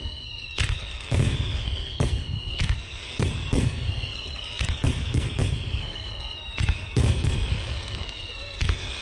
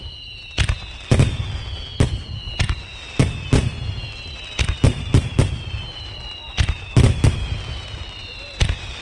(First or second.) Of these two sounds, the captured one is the second